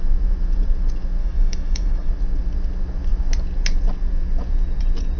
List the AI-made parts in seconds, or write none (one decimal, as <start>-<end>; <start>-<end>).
1.2-2.1

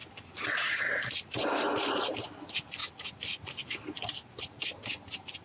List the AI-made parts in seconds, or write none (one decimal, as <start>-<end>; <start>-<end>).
none